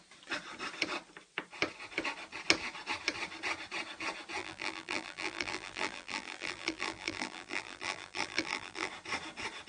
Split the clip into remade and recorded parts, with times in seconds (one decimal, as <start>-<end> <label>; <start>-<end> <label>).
0.0-4.4 recorded; 4.4-8.9 remade; 8.9-9.7 recorded

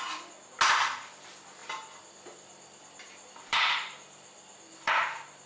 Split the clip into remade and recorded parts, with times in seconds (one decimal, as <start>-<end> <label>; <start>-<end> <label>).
0.0-1.6 recorded; 1.6-4.9 remade; 4.9-5.5 recorded

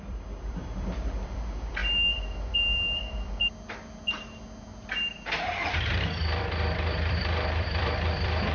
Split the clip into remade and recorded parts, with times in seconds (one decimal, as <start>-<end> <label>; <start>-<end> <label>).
0.0-8.5 remade

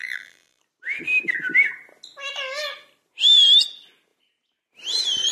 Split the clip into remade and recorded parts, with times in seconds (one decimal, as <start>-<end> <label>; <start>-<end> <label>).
0.0-0.6 remade; 0.6-5.3 recorded

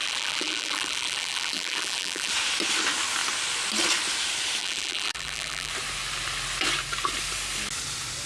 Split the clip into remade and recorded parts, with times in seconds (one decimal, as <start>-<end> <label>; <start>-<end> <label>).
0.0-2.3 remade; 2.3-4.6 recorded; 4.6-5.7 remade; 5.7-8.3 recorded

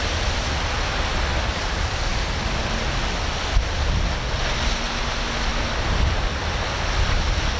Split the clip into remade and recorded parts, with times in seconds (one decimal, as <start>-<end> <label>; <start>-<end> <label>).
0.0-7.6 recorded

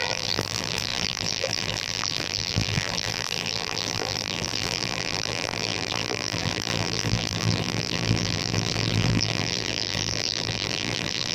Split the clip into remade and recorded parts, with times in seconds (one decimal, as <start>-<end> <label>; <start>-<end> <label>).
0.0-11.3 remade

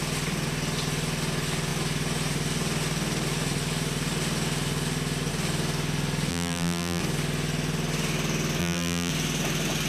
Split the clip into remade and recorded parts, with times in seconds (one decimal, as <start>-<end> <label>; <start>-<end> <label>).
0.0-6.3 recorded; 6.3-7.0 remade; 7.0-8.6 recorded; 8.6-9.1 remade; 9.1-9.9 recorded